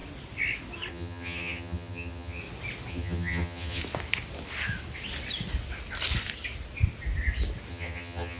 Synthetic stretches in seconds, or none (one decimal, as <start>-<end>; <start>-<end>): 0.9-2.4; 2.9-3.8; 7.7-8.4